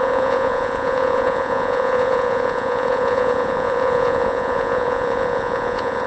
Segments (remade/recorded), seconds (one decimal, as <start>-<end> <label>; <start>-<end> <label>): 0.0-6.1 remade